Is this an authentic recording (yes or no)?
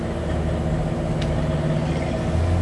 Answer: yes